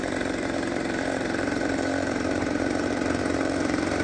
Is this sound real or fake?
fake